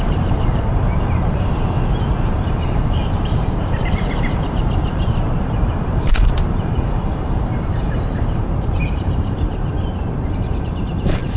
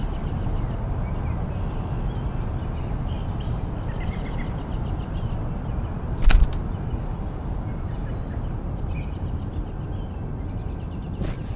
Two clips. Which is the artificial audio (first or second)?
first